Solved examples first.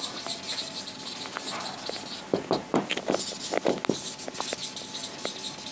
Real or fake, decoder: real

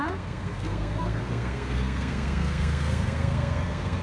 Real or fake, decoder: fake, codec, SNAC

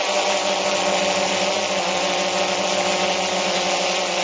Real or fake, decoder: real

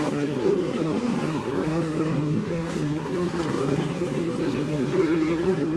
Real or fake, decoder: fake, codec, SNAC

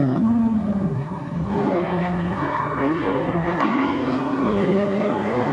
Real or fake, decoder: fake, codec, SNAC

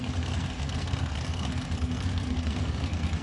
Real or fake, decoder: fake, codec, SNAC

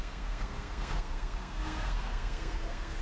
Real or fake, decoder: fake, codec, SNAC